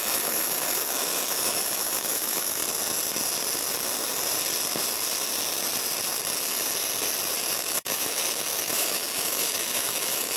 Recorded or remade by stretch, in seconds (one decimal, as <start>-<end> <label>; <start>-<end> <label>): 0.0-2.6 remade; 2.6-7.5 recorded; 7.5-10.4 remade